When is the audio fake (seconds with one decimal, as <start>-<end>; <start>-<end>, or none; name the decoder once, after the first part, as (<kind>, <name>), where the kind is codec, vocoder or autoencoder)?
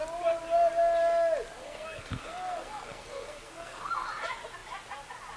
1.6-3.9 (codec, SNAC)